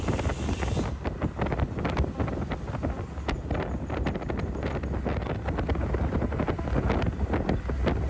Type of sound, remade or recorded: recorded